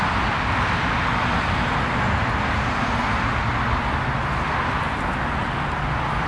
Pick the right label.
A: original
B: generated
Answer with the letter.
A